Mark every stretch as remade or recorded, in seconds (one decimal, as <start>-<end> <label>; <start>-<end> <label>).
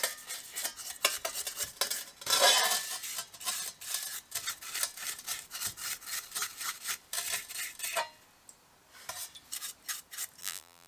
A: 0.0-10.4 recorded; 10.4-10.9 remade